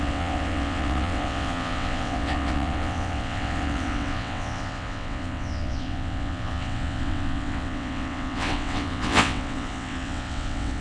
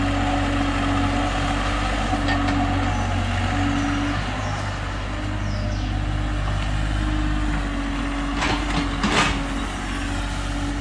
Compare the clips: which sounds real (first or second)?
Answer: second